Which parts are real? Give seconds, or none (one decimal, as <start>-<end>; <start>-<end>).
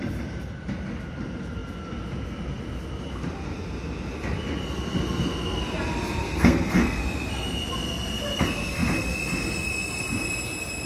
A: 0.0-6.2; 7.0-10.9